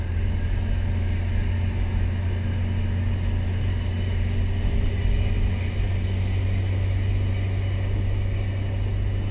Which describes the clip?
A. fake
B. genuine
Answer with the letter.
B